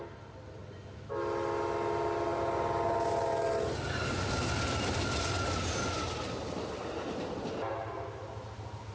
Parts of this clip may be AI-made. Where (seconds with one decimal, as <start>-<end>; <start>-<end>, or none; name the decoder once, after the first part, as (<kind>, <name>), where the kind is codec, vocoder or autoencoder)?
none